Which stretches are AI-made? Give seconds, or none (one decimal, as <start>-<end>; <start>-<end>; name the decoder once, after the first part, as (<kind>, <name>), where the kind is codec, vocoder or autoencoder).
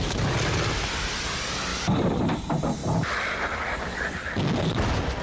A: 0.0-5.2 (vocoder, BigVGAN v2)